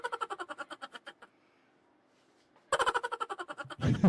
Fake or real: real